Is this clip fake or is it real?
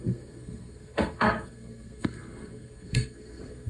fake